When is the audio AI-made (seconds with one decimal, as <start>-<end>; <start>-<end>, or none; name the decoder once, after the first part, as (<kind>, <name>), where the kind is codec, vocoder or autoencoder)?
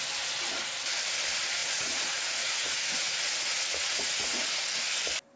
1.6-4.6 (vocoder, Vocos)